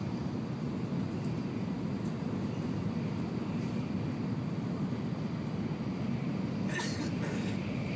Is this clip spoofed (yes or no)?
no